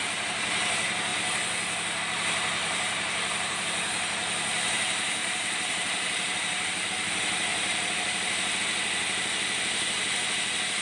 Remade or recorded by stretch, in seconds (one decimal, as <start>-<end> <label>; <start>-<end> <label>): 0.0-2.6 recorded; 2.6-3.6 remade; 3.6-5.2 recorded; 5.2-6.9 remade; 6.9-7.5 recorded; 7.5-8.6 remade; 8.6-10.8 recorded